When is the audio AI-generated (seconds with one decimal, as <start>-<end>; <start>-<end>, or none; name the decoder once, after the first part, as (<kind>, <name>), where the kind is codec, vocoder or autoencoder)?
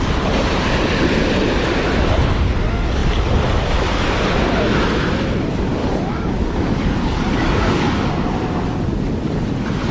5.8-8.1 (codec, DAC)